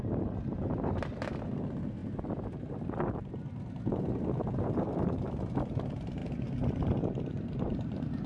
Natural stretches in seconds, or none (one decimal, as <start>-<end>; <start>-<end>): 6.2-7.0